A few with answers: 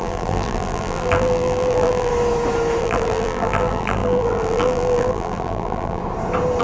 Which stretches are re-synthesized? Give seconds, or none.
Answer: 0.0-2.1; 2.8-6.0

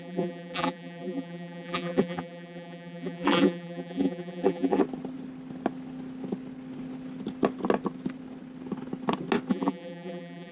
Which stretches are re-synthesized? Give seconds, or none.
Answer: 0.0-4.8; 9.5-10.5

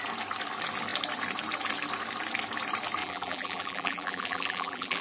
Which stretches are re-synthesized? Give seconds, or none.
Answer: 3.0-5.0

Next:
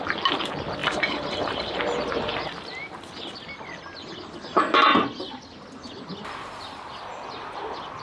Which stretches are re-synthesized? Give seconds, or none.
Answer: 0.8-1.7

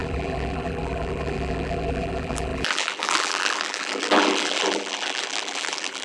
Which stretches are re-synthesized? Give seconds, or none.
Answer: 0.0-6.0